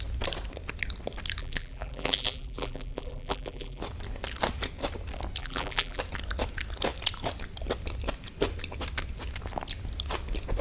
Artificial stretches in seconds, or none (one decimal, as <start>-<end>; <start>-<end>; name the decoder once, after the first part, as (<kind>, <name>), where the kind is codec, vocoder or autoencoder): 1.4-3.8 (vocoder, BigVGAN v2); 5.4-6.0